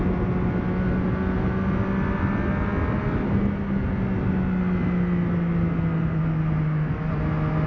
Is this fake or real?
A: real